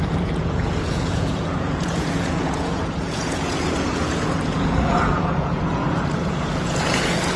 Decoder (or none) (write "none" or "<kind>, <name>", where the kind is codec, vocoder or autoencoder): vocoder, Vocos